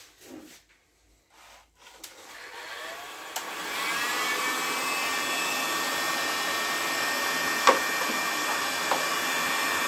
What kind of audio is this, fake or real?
real